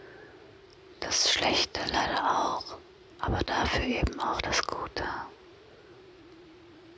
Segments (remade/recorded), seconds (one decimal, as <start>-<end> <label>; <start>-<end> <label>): 0.0-0.7 recorded; 0.7-2.0 remade; 2.0-2.5 recorded; 2.5-3.1 remade; 3.1-3.8 recorded; 3.8-4.4 remade; 4.4-7.0 recorded